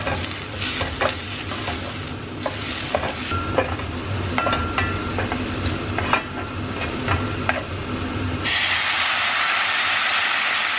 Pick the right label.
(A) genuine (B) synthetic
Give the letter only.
A